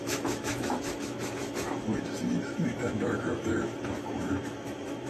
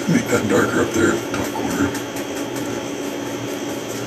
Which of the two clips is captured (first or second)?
second